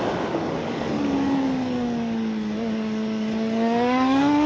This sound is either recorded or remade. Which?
remade